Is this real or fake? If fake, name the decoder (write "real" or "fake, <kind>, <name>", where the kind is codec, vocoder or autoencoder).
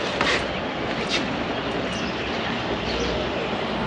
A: real